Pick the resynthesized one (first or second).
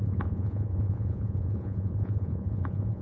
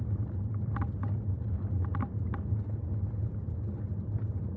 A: first